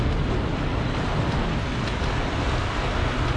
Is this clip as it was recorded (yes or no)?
yes